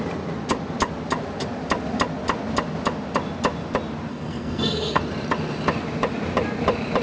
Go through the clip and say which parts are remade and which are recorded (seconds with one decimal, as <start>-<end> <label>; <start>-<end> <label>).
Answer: 0.0-4.1 recorded; 4.1-5.0 remade; 5.0-7.0 recorded